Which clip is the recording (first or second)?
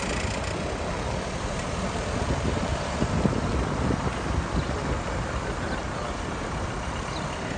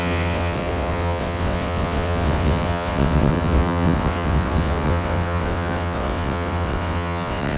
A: first